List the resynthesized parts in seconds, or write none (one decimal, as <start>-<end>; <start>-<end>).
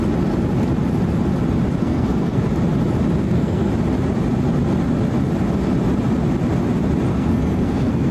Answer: 1.8-2.4; 3.2-3.7; 7.1-8.1